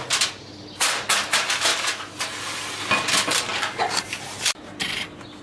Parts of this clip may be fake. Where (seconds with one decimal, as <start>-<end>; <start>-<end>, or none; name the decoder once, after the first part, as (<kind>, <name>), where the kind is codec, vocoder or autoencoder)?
none